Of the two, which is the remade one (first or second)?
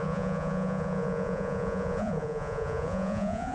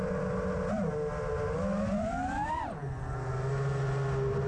first